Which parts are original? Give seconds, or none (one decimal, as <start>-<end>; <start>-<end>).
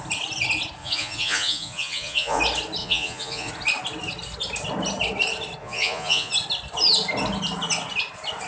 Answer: 0.0-0.8; 2.4-2.8; 3.5-5.6; 6.3-8.5